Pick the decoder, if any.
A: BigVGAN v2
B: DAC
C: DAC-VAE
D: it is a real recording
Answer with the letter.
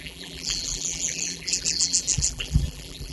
A